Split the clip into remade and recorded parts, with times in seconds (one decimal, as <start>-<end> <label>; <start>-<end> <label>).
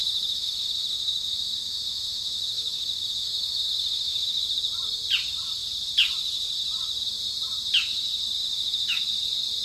0.0-4.5 remade; 4.5-8.4 recorded; 8.4-9.0 remade; 9.0-9.6 recorded